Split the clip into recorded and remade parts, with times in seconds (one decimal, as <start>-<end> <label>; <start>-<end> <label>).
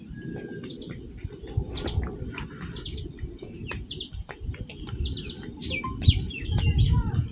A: 0.0-7.3 recorded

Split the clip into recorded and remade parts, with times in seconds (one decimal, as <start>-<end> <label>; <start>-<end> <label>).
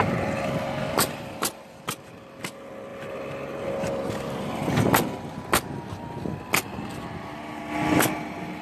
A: 0.0-0.8 recorded; 0.8-2.4 remade; 2.4-8.6 recorded